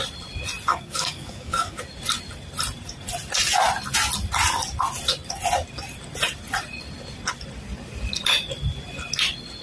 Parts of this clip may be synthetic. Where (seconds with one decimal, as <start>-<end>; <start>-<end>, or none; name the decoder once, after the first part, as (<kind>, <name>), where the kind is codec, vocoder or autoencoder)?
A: 0.7-1.8 (codec, DAC)